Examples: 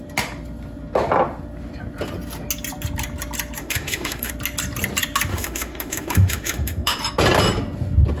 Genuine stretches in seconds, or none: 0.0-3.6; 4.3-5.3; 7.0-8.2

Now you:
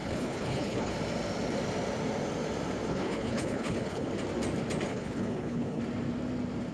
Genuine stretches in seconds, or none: 0.9-2.9; 4.1-4.9; 5.8-6.7

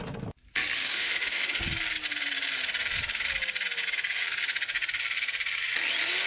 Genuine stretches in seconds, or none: 0.0-0.8; 1.6-6.3

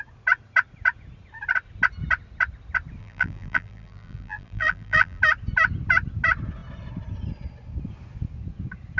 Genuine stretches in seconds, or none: 0.0-3.0; 5.2-9.0

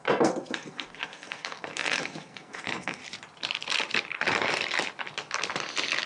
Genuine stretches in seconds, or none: 3.0-6.1

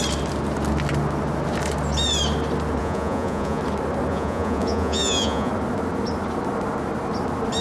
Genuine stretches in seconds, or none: 0.0-2.8; 3.6-4.1; 5.5-7.6